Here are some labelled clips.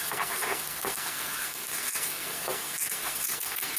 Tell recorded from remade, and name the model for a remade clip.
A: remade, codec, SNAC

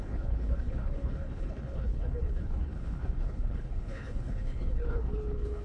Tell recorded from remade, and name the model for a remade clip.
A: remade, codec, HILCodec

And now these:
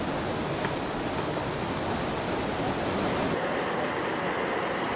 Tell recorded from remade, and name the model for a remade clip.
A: recorded